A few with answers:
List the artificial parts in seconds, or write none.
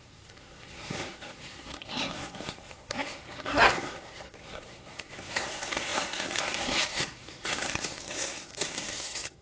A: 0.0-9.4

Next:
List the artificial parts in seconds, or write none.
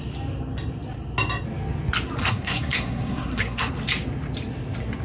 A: 2.2-3.7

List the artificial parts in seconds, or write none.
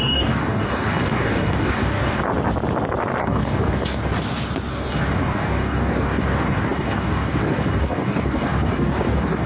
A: 0.0-2.2; 3.2-4.0; 4.7-9.5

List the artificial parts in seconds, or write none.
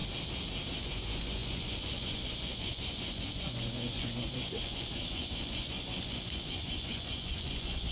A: 0.8-7.9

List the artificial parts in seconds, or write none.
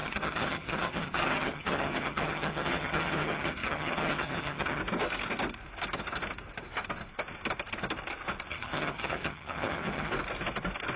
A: 0.0-4.8; 8.5-10.1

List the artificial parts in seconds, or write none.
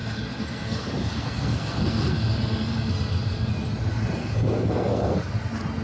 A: 0.0-3.5; 4.2-5.2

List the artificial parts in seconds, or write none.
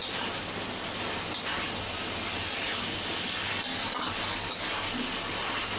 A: 0.0-0.8; 2.7-3.6